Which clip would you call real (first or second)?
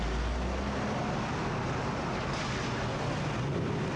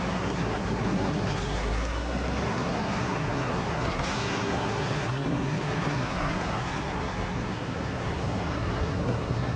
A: first